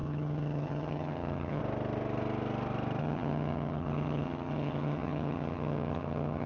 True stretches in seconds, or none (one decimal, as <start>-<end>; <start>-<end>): 1.6-3.0